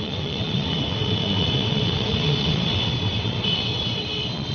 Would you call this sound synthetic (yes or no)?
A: yes